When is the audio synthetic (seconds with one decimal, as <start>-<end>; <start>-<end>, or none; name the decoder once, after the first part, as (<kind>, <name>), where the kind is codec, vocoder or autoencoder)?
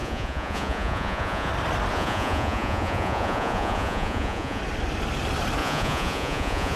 0.0-1.5 (vocoder, Vocos); 1.9-4.6; 5.6-6.8